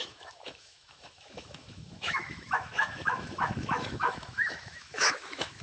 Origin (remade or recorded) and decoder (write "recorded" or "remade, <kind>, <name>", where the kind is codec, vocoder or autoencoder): remade, autoencoder, DAC-VAE